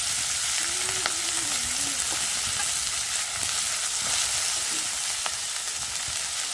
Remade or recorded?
recorded